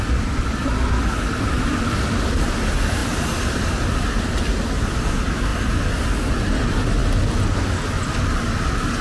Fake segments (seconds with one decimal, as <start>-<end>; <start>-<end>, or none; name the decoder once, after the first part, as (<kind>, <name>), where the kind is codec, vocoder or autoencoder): none